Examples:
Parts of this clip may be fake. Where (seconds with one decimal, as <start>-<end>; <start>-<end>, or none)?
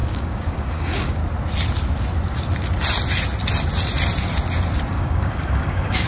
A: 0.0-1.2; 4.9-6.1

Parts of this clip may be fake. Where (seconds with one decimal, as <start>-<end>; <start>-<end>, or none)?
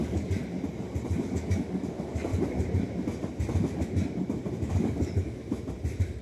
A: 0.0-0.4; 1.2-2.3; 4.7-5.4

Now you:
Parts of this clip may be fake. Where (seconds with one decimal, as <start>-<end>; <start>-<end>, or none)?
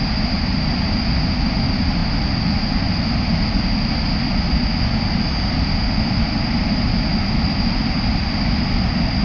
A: none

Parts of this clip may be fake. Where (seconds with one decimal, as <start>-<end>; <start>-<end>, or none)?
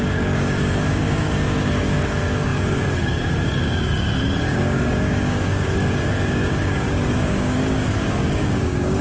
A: 0.0-3.9; 4.4-9.0